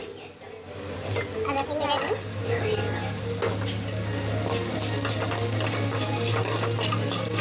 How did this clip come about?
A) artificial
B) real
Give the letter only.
B